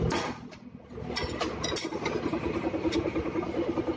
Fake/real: real